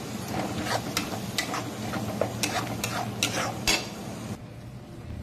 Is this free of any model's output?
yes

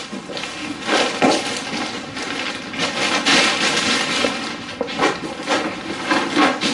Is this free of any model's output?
yes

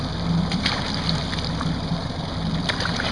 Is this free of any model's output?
yes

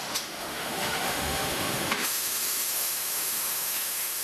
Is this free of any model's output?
no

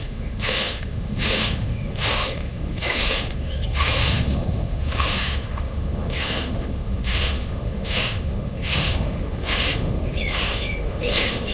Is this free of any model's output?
no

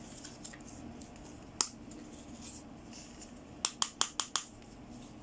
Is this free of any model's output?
yes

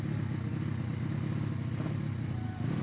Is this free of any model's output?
yes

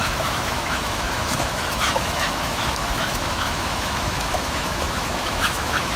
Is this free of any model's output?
no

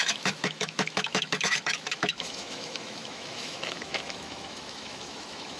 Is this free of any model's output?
no